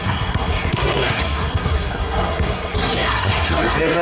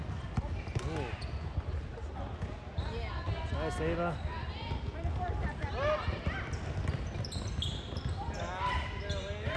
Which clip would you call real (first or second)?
second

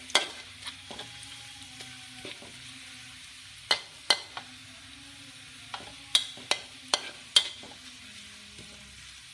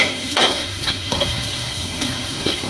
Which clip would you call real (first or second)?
first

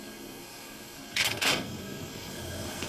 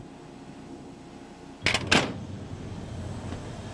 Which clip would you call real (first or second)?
second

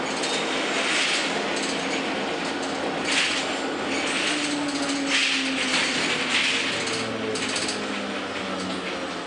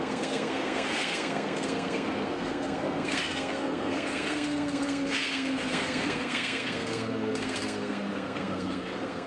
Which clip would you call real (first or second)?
first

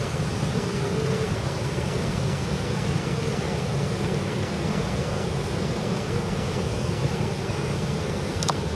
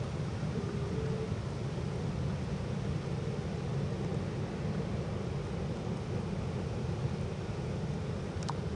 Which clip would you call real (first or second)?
second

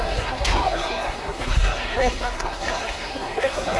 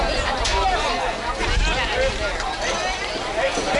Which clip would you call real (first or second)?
second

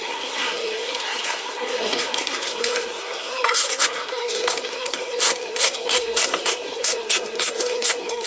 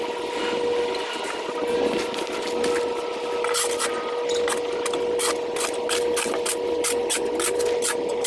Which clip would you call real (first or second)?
second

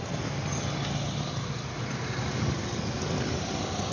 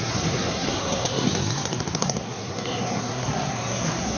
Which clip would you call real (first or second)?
first